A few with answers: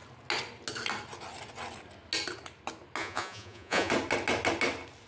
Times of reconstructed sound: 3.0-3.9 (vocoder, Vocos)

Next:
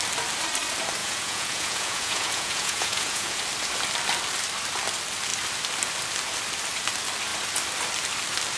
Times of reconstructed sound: 1.0-3.4 (vocoder, Vocos)

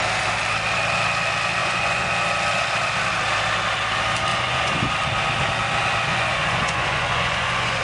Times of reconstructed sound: 1.6-2.1 (vocoder, Vocos); 4.3-4.9; 6.1-7.8

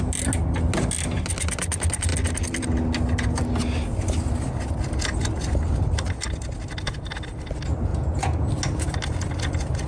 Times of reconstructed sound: 7.9-8.5 (vocoder, Vocos)